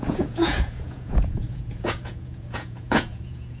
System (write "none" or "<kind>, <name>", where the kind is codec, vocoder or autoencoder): vocoder, Vocos